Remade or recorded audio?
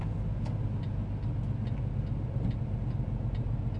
recorded